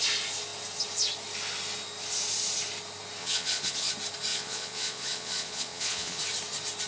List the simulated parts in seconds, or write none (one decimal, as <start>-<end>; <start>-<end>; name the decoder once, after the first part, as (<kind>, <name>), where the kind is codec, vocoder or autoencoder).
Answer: 3.2-3.9 (vocoder, Vocos); 4.3-6.2